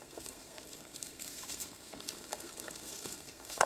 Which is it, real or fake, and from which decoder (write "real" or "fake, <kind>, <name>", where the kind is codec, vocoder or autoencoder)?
fake, codec, SNAC